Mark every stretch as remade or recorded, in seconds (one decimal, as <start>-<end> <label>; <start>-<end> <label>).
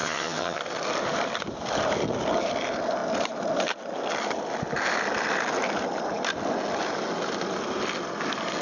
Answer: 0.0-0.6 remade; 0.6-8.6 recorded